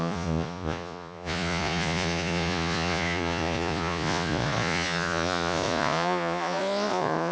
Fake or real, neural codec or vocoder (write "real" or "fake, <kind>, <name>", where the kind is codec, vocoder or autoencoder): fake, vocoder, Vocos